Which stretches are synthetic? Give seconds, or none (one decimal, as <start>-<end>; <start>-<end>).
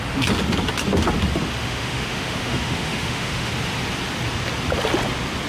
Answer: 1.6-3.5